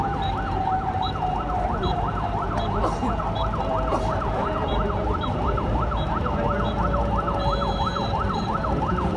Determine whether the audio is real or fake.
fake